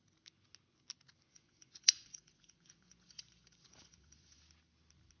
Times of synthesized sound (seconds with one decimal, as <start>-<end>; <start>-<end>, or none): 1.3-4.4